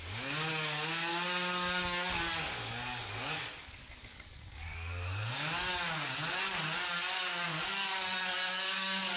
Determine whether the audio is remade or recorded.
remade